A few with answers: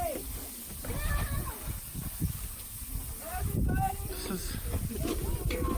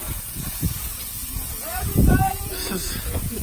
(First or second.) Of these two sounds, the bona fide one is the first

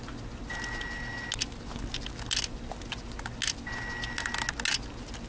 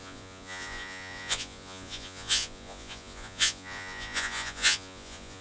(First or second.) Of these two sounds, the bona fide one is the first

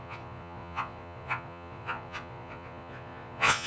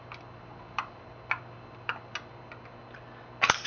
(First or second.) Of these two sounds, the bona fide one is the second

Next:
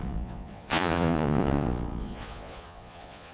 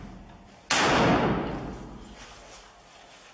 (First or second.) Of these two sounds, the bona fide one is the second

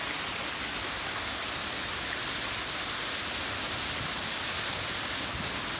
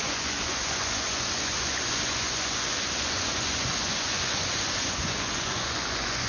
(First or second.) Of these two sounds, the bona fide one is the first